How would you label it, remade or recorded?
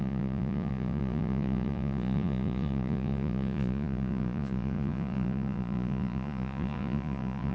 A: remade